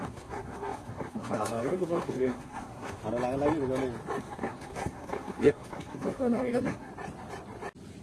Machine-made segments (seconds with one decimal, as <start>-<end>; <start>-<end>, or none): 0.0-3.0; 4.2-6.9